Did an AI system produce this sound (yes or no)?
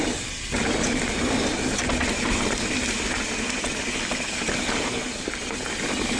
no